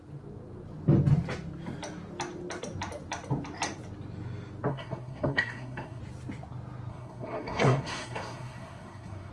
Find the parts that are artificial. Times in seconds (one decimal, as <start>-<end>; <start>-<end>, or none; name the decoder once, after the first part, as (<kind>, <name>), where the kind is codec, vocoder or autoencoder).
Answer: 4.7-6.0 (codec, SNAC); 6.9-9.3